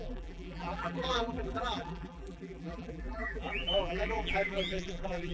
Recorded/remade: remade